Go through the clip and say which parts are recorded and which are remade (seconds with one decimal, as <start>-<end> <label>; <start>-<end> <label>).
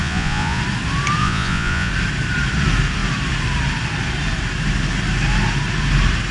0.0-0.6 remade; 0.6-1.2 recorded; 1.2-1.9 remade; 1.9-6.3 recorded